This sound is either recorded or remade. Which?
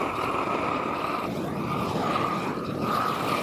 recorded